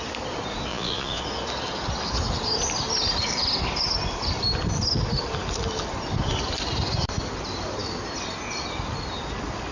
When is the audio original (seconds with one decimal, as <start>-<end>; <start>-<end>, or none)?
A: 0.0-0.7; 1.2-9.7